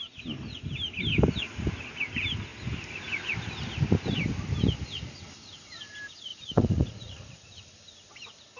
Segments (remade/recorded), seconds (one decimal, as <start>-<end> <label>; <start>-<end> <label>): 0.0-6.3 recorded; 6.3-7.6 remade; 7.6-8.6 recorded